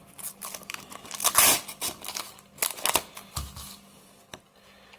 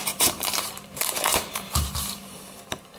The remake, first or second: second